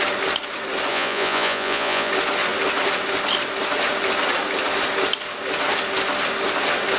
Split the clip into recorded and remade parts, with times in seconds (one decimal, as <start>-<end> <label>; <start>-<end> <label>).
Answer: 0.0-0.9 recorded; 0.9-2.1 remade; 2.1-7.0 recorded